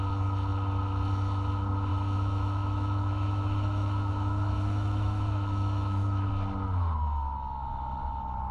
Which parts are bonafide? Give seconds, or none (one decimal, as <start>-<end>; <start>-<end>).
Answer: 0.0-1.9; 6.3-8.5